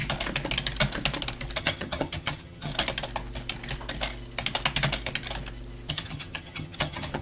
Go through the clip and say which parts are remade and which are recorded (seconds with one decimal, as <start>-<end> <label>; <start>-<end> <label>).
0.0-1.6 recorded; 1.6-2.7 remade; 2.7-5.9 recorded; 5.9-7.2 remade